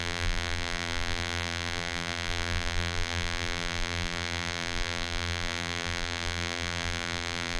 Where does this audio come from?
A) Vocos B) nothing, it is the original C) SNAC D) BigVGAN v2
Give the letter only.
D